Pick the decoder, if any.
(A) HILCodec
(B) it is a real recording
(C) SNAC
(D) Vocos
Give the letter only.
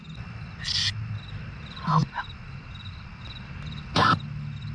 B